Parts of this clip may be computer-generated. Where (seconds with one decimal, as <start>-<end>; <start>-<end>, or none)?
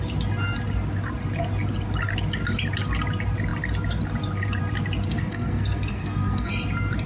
5.1-6.5